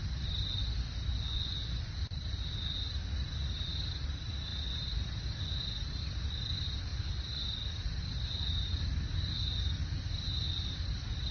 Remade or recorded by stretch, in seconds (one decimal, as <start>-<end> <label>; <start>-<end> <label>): 0.0-1.3 recorded; 1.3-1.9 remade; 1.9-11.3 recorded